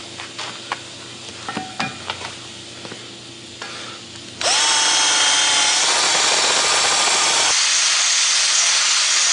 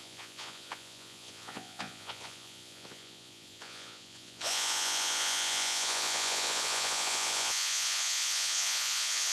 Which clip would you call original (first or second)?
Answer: first